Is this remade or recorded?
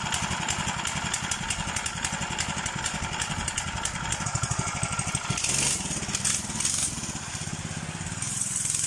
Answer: remade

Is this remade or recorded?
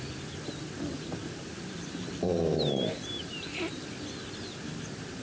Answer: remade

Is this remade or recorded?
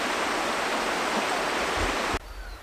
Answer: recorded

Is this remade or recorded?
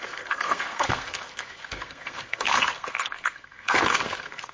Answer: remade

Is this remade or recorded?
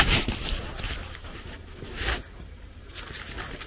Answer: recorded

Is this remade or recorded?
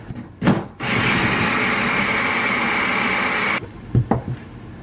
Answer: recorded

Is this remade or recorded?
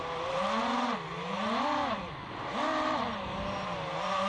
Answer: recorded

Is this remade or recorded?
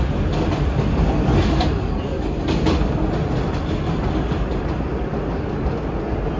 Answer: recorded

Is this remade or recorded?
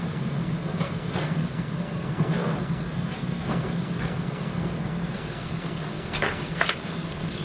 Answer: remade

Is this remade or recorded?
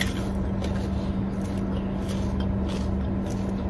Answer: recorded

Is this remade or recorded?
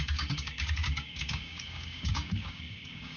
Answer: remade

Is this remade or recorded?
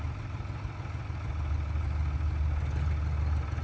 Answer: recorded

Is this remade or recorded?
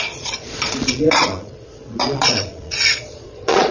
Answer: remade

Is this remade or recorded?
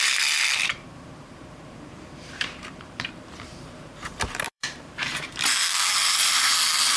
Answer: remade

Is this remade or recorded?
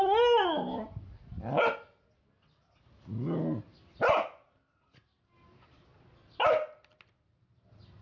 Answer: recorded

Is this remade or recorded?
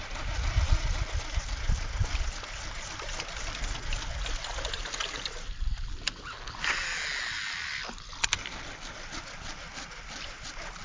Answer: recorded